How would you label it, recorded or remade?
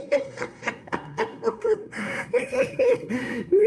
remade